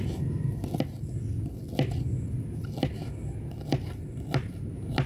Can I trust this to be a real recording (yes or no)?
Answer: yes